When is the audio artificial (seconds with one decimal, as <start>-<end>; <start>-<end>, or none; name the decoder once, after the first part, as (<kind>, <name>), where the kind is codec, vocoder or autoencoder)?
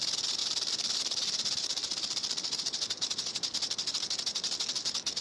0.4-3.5 (vocoder, BigVGAN v2)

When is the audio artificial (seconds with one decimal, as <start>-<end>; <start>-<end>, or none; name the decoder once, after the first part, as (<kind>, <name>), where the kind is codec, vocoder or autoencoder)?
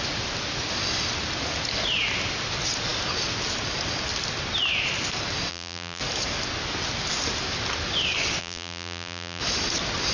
5.5-6.0 (vocoder, BigVGAN v2); 8.4-9.4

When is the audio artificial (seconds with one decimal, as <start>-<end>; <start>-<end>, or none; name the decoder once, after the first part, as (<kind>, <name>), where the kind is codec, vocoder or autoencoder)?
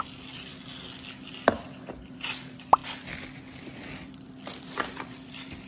0.0-0.5 (vocoder, BigVGAN v2); 2.0-2.8; 3.4-5.7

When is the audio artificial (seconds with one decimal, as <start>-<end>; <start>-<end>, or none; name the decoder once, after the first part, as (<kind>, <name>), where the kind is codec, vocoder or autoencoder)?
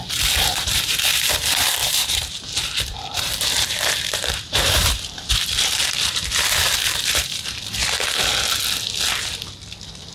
0.0-7.8 (vocoder, BigVGAN v2)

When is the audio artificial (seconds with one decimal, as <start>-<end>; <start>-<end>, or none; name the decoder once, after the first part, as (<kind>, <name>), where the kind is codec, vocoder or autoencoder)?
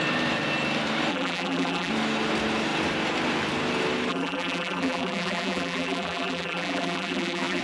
1.1-1.9 (vocoder, BigVGAN v2); 4.1-7.6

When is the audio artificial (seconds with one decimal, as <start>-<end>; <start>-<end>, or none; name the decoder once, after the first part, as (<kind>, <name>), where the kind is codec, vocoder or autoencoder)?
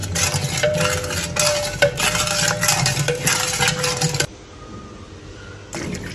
none